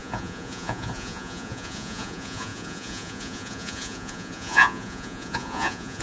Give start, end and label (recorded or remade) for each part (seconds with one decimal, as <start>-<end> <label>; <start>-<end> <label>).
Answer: 0.0-6.0 remade